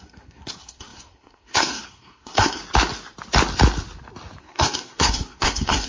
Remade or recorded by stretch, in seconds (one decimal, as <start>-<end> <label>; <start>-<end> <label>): 0.0-2.6 remade; 2.6-4.4 recorded; 4.4-5.9 remade